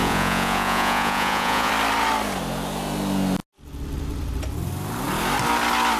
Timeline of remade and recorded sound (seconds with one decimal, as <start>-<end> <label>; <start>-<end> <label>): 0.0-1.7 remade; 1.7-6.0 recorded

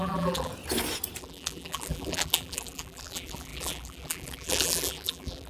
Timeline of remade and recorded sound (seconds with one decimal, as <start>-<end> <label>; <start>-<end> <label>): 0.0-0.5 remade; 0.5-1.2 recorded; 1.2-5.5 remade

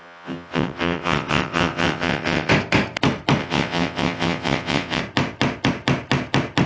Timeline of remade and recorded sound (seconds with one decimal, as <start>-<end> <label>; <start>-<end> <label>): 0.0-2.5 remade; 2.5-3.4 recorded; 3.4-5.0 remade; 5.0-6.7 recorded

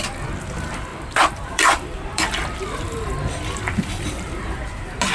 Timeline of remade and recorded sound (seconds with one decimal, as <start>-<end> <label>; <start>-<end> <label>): 0.0-0.9 recorded; 0.9-4.0 remade; 4.0-5.1 recorded

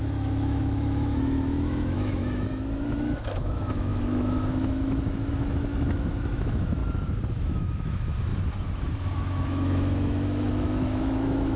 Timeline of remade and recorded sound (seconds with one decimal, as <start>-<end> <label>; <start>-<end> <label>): 0.0-6.8 remade; 6.8-7.4 recorded; 7.4-8.3 remade; 8.3-9.1 recorded; 9.1-11.6 remade

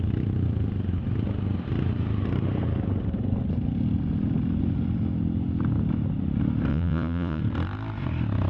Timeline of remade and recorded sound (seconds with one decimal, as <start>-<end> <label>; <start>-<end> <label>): 0.0-6.7 recorded; 6.7-7.4 remade; 7.4-8.5 recorded

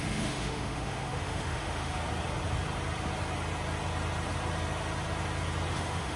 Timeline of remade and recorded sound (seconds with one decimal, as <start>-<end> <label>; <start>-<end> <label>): 0.0-2.0 remade; 2.0-5.7 recorded; 5.7-6.2 remade

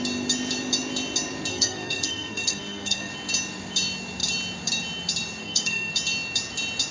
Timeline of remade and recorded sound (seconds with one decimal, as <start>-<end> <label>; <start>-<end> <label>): 0.0-1.5 recorded; 1.5-3.1 remade; 3.1-5.4 recorded; 5.4-5.9 remade; 5.9-6.9 recorded